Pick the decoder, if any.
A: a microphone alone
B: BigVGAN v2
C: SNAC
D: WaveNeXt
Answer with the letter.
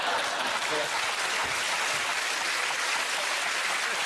A